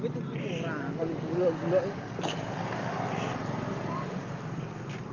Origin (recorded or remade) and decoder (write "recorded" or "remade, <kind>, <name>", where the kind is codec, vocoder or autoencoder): recorded